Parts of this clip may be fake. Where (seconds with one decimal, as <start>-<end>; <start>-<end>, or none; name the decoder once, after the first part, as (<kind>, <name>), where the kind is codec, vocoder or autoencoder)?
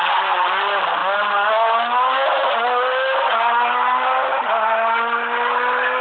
1.0-1.5 (vocoder, BigVGAN v2)